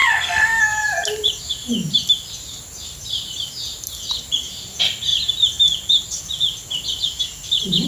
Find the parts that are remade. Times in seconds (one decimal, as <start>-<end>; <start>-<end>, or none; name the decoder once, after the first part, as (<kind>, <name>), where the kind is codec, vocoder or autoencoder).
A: 0.0-0.6 (codec, SNAC)